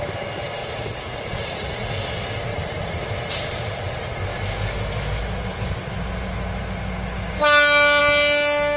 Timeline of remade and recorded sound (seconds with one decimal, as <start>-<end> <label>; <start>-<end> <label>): 0.0-0.6 recorded; 0.6-1.9 remade; 1.9-2.5 recorded; 2.5-3.0 remade; 3.0-8.8 recorded